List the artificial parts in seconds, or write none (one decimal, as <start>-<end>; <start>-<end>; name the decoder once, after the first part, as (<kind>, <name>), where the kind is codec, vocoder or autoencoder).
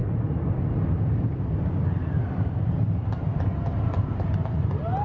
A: 2.0-3.1 (vocoder, BigVGAN v2); 3.7-4.3